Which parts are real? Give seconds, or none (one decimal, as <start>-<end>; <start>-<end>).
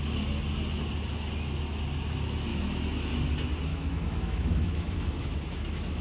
0.0-2.5; 3.1-3.7